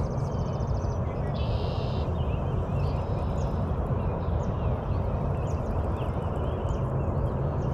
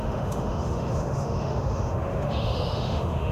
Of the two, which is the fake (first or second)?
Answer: second